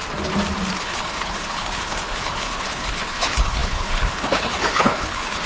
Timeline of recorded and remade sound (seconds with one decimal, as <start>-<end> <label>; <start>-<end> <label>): 0.0-0.8 recorded; 0.8-5.5 remade